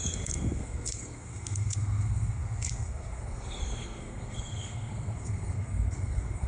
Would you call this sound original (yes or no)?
no